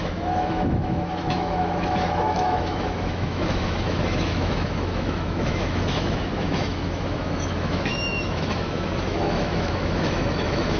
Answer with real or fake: fake